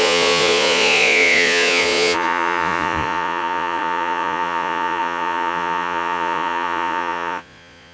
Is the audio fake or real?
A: fake